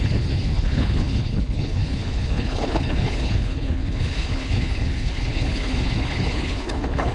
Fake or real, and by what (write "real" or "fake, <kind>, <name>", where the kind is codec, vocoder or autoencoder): fake, codec, HILCodec